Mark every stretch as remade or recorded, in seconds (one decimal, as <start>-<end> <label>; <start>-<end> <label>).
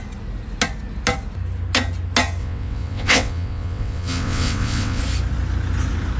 0.0-2.4 recorded; 2.4-5.0 remade; 5.0-6.2 recorded